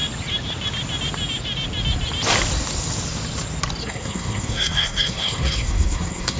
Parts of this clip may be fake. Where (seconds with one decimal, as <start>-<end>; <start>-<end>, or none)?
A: 3.8-6.4